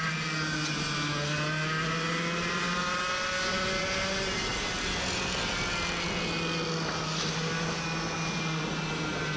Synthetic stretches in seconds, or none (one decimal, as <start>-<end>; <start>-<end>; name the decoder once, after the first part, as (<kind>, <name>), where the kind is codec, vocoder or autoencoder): none